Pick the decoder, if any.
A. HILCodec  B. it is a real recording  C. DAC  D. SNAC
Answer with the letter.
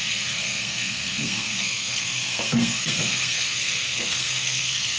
D